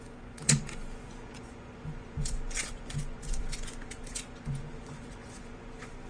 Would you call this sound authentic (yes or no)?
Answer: no